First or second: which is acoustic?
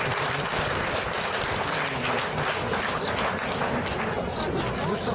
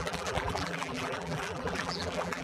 first